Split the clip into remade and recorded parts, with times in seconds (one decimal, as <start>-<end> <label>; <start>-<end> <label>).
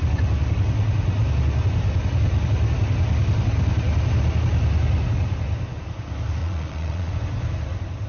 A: 0.0-6.4 recorded; 6.4-7.1 remade; 7.1-8.1 recorded